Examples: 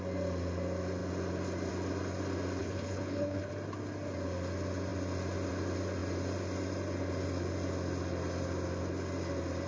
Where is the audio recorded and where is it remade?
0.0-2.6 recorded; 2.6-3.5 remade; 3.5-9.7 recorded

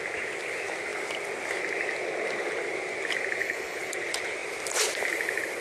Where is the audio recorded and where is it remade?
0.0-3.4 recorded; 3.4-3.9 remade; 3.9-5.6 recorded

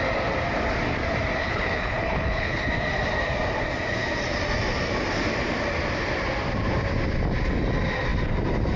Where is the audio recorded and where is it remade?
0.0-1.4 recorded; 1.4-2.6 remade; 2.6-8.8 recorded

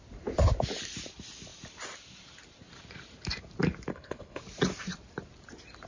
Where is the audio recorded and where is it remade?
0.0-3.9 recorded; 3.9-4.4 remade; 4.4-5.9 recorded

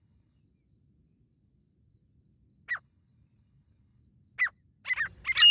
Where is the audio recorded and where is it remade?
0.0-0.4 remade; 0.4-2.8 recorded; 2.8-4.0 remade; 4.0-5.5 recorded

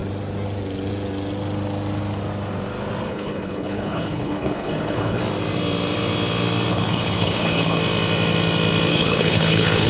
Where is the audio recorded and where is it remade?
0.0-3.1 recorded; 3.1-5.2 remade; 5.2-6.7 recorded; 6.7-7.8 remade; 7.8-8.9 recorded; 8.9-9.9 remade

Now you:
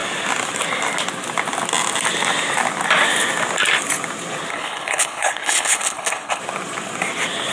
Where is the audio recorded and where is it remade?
0.0-4.5 recorded; 4.5-6.4 remade; 6.4-7.5 recorded